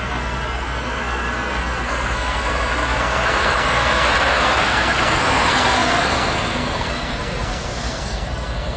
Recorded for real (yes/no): no